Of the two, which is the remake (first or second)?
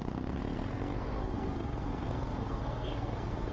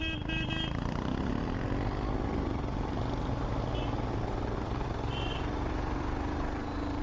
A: first